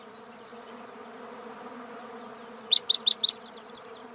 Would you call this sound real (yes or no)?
yes